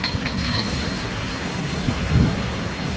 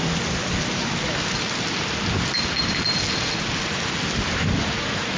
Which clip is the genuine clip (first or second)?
second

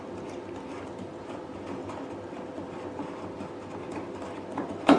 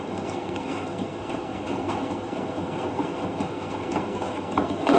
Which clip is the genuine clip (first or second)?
first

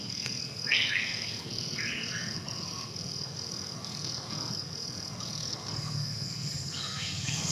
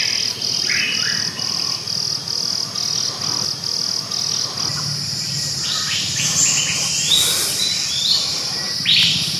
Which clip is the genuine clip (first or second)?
second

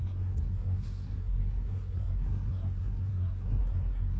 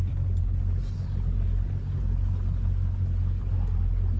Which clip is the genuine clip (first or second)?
second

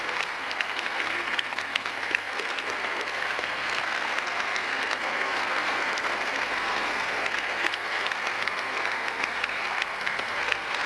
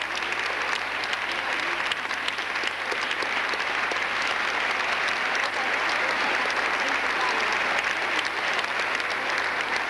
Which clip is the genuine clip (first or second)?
second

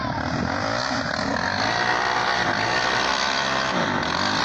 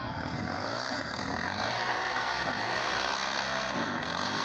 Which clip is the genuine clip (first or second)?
first